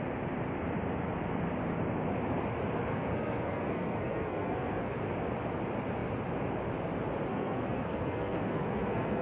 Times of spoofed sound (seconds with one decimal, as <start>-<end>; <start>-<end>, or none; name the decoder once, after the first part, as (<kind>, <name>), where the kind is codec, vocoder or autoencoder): 2.9-5.1 (codec, SNAC); 7.3-9.2